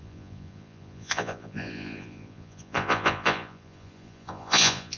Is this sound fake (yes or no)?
yes